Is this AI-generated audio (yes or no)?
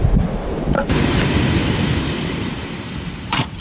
yes